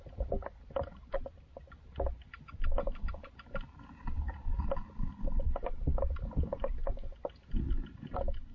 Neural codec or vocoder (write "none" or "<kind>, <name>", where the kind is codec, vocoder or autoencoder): none